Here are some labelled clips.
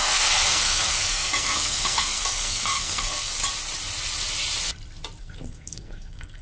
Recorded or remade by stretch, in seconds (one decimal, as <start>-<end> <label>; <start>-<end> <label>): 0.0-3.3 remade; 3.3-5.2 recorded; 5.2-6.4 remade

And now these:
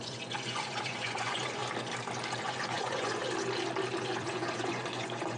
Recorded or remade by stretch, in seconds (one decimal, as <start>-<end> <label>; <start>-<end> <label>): 0.0-1.6 remade; 1.6-2.4 recorded; 2.4-3.2 remade; 3.2-4.0 recorded; 4.0-5.4 remade

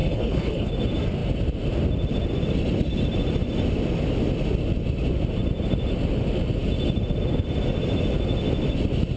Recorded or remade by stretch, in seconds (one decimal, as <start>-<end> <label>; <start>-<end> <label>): 0.0-0.7 remade; 0.7-9.2 recorded